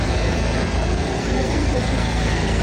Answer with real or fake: fake